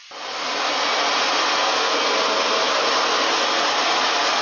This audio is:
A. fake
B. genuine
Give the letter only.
B